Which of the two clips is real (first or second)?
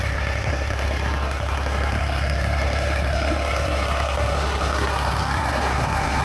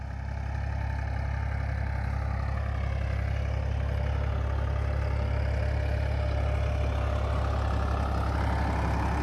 second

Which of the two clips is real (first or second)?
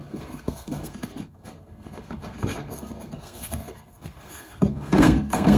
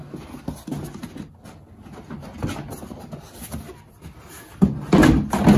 second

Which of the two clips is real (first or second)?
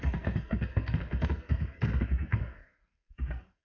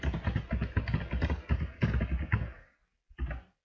second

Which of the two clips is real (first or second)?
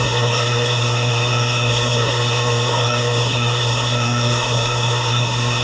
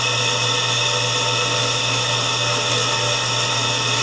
second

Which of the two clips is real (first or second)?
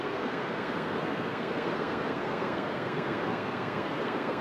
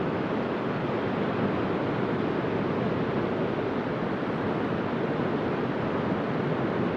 second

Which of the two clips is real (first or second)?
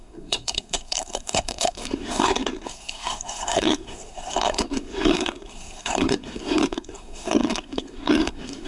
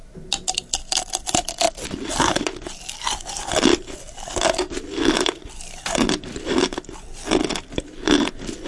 second